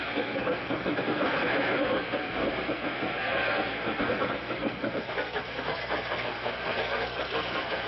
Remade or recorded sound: remade